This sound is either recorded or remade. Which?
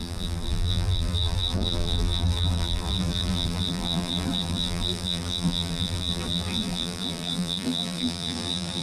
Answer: remade